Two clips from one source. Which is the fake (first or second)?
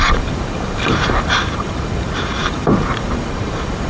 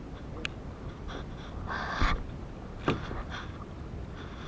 first